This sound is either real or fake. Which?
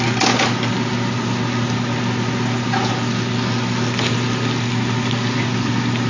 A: real